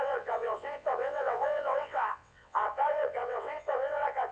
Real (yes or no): no